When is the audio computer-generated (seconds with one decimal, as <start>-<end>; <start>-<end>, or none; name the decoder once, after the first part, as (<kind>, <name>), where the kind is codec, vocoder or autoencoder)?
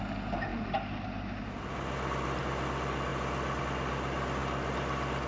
none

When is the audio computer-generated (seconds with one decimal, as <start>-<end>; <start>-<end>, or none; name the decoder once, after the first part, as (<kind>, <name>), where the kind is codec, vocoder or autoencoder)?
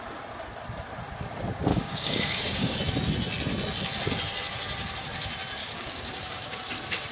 1.7-2.8 (codec, DAC); 5.6-6.6